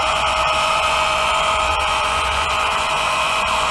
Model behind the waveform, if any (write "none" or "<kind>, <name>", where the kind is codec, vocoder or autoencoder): vocoder, Vocos